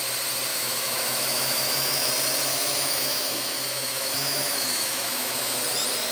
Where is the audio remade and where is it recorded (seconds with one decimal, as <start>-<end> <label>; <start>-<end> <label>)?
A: 0.0-0.5 recorded; 0.5-2.1 remade; 2.1-2.5 recorded; 2.5-5.6 remade; 5.6-6.1 recorded